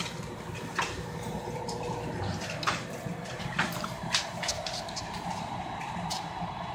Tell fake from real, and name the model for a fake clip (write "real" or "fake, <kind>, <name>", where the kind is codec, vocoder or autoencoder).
fake, vocoder, BigVGAN v2